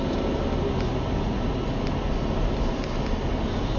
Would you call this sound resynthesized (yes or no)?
no